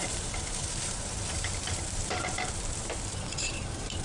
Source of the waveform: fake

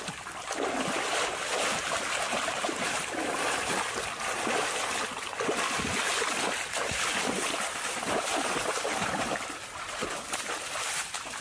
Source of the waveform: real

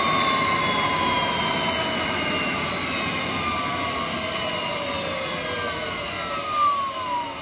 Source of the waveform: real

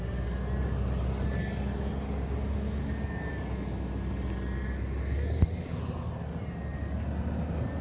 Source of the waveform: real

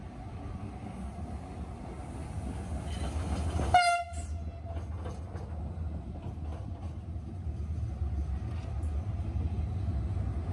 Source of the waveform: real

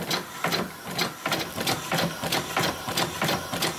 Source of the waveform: fake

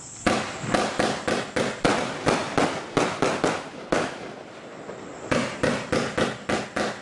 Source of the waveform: real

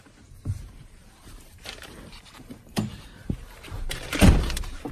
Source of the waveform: fake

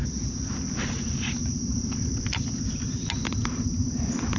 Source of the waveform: real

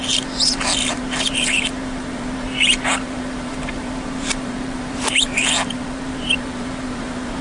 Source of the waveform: fake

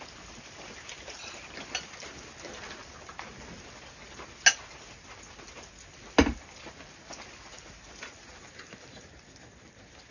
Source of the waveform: real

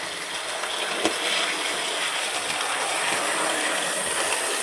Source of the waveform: real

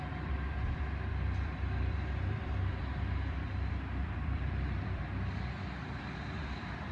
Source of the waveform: fake